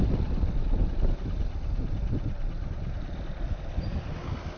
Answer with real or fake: real